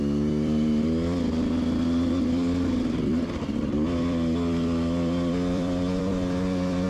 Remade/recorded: remade